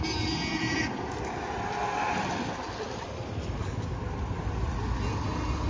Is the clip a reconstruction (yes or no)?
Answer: no